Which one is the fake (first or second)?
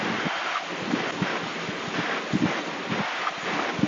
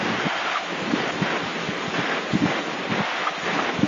second